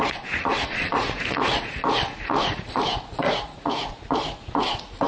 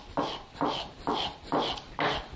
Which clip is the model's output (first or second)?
first